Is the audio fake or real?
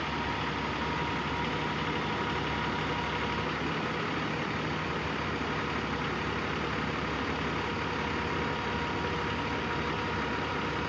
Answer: real